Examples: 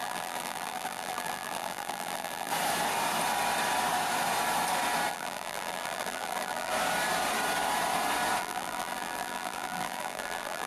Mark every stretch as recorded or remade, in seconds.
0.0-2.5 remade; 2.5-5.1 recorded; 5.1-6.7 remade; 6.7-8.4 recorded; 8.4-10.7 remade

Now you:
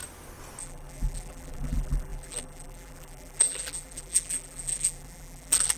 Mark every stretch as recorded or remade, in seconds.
0.0-0.6 recorded; 0.6-5.8 remade

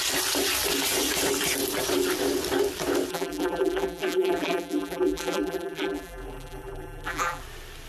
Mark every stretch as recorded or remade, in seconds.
0.0-3.1 recorded; 3.1-7.4 remade; 7.4-7.9 recorded

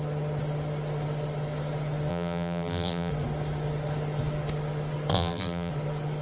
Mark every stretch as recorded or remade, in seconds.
0.0-2.1 recorded; 2.1-3.1 remade; 3.1-5.1 recorded; 5.1-5.7 remade; 5.7-6.2 recorded

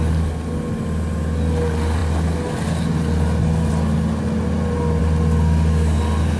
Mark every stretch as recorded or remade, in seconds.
0.0-6.4 recorded

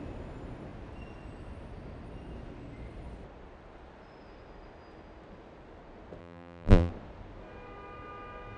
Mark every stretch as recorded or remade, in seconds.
0.0-6.2 recorded; 6.2-6.9 remade; 6.9-8.6 recorded

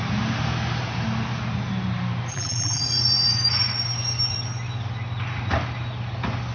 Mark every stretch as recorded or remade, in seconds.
0.0-2.3 recorded; 2.3-2.8 remade; 2.8-6.5 recorded